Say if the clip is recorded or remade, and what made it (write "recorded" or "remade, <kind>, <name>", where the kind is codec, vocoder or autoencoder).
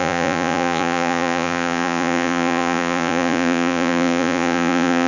remade, vocoder, Vocos